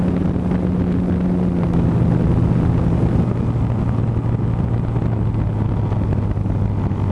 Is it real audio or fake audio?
real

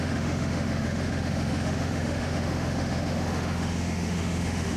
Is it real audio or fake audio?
fake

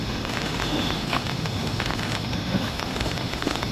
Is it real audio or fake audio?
fake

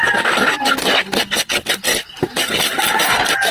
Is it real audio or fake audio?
real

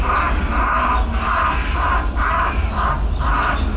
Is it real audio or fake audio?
real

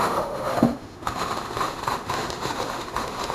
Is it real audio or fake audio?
fake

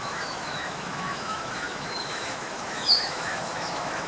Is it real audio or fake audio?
fake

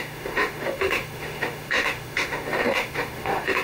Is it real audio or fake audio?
fake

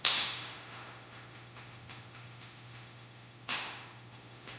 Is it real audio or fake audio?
fake